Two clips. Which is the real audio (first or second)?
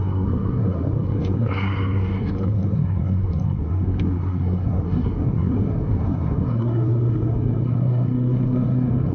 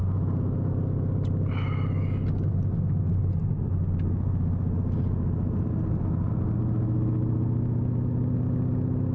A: second